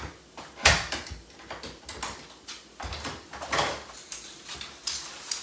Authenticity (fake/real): real